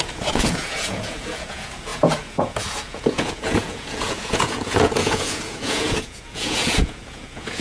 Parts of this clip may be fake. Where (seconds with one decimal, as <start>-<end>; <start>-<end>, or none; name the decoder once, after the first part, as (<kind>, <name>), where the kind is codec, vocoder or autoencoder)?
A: 0.0-7.6 (vocoder, Vocos)